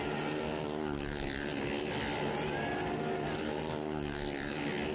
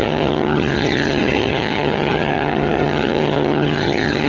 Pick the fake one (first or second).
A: second